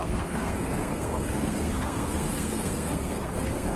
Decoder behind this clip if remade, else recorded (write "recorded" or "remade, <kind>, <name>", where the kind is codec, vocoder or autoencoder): remade, codec, SNAC